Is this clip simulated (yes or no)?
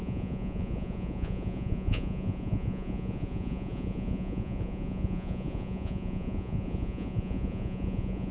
yes